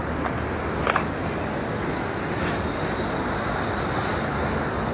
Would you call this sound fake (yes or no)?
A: no